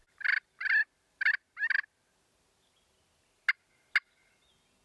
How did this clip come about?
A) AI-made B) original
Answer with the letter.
B